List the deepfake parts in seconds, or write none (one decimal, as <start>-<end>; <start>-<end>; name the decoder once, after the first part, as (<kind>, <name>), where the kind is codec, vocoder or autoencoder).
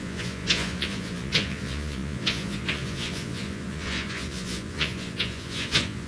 0.0-6.1 (vocoder, Vocos)